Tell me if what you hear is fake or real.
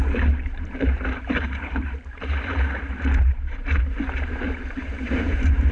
fake